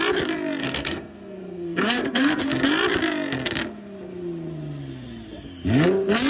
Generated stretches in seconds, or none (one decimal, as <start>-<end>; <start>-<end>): 0.6-2.4